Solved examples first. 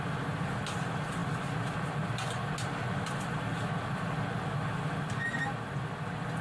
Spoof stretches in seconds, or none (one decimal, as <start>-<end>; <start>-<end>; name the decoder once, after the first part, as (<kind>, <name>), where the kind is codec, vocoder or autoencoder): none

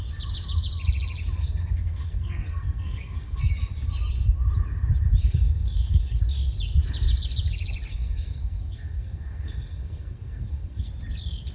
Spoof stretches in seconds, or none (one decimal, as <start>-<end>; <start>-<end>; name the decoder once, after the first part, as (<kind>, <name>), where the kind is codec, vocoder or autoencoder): 1.4-3.5 (codec, SNAC); 5.2-6.2; 7.9-10.9

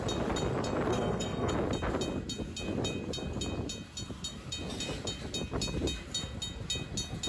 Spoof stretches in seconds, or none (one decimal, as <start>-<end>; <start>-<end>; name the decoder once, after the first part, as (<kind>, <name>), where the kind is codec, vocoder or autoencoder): 0.9-1.5 (codec, SNAC)

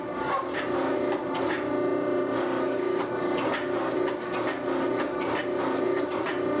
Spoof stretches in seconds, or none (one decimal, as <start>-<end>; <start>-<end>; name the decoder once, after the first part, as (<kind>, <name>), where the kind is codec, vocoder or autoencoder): none

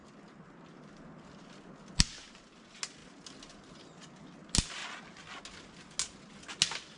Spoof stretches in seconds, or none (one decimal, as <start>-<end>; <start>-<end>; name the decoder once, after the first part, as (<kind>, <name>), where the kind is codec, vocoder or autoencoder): none

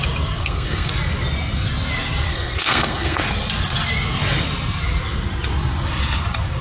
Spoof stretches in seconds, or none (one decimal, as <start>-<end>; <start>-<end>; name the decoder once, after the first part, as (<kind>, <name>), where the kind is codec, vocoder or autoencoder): 0.4-0.9 (codec, SNAC); 2.3-3.2

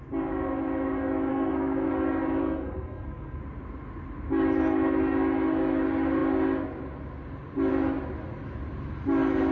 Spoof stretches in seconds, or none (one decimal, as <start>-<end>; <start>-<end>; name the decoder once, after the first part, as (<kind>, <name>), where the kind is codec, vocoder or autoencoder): 1.3-1.9 (codec, SNAC); 2.4-3.4

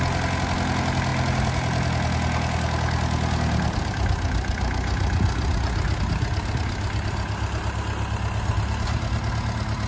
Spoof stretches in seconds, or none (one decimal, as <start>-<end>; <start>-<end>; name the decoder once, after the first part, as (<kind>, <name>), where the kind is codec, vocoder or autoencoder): none